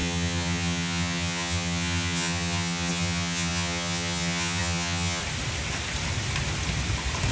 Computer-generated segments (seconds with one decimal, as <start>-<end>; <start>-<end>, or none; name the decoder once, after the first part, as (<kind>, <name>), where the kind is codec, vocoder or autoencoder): 0.0-5.2 (vocoder, HiFi-GAN)